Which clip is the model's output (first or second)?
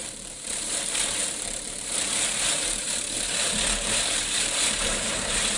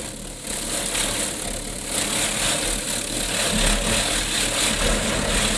first